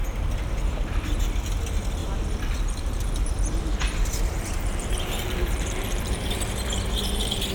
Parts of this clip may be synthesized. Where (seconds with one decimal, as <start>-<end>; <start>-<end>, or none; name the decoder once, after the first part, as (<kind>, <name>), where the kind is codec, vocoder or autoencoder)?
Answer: 0.0-0.9 (vocoder, BigVGAN v2); 2.0-6.5

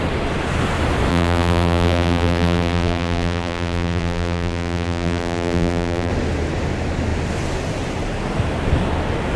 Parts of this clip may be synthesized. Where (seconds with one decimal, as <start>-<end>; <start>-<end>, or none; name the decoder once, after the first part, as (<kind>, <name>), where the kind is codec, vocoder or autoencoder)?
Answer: 1.1-6.1 (vocoder, BigVGAN v2)

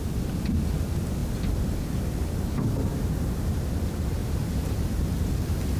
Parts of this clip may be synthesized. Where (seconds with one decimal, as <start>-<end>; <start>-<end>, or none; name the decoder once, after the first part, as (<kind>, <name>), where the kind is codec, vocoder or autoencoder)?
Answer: 2.8-3.6 (vocoder, BigVGAN v2); 4.2-5.3

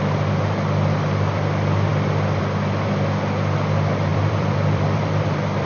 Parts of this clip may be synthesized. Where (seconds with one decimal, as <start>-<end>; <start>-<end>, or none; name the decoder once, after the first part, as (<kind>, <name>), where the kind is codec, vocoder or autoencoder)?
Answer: 4.1-5.7 (vocoder, BigVGAN v2)

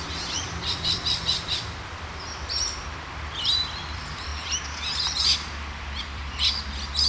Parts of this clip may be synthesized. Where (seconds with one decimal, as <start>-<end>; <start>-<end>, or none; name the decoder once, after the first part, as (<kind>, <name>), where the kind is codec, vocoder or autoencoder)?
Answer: 0.0-4.3 (vocoder, BigVGAN v2); 6.0-7.1

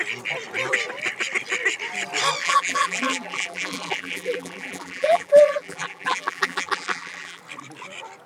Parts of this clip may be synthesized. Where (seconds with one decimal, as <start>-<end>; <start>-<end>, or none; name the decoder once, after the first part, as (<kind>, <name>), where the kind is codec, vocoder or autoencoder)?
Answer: 2.4-7.4 (vocoder, BigVGAN v2)